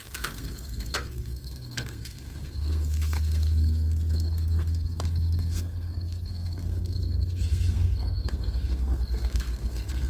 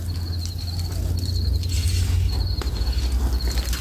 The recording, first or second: second